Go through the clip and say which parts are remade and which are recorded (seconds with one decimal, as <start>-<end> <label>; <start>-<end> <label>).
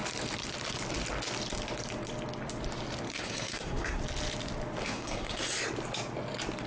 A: 0.0-3.1 recorded; 3.1-4.0 remade; 4.0-4.8 recorded; 4.8-5.4 remade; 5.4-6.7 recorded